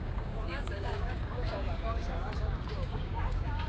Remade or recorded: remade